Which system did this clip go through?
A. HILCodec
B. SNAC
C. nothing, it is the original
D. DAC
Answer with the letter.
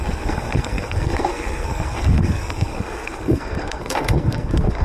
B